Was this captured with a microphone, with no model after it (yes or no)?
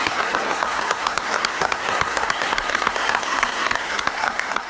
no